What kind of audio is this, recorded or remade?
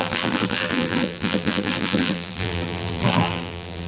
remade